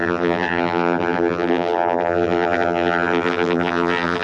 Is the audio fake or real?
fake